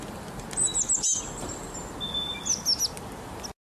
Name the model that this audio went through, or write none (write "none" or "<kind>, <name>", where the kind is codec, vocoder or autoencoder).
none